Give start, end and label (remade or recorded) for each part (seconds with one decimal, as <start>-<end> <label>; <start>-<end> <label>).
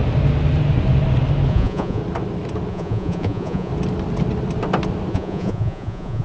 0.0-1.5 recorded; 1.5-2.0 remade; 2.0-2.7 recorded; 2.7-3.7 remade; 3.7-5.1 recorded; 5.1-6.2 remade